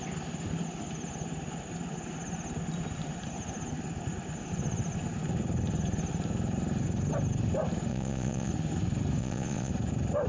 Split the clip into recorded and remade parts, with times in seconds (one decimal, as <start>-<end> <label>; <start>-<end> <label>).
0.0-7.9 recorded; 7.9-8.5 remade; 8.5-9.2 recorded; 9.2-9.7 remade; 9.7-10.3 recorded